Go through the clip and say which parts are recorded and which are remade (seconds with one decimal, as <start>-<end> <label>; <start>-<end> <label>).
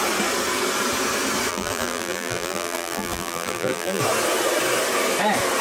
0.0-1.5 recorded; 1.5-4.0 remade; 4.0-5.6 recorded